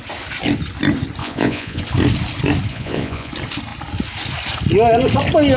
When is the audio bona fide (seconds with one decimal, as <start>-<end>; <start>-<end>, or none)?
0.0-1.2; 1.8-2.7; 3.3-5.6